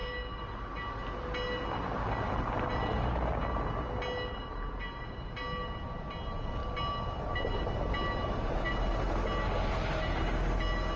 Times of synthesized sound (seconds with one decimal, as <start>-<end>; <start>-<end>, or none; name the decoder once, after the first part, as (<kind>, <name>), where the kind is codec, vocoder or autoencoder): none